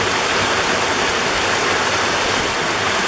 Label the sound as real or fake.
real